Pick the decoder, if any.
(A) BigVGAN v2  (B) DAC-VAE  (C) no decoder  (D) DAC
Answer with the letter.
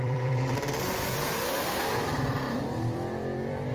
A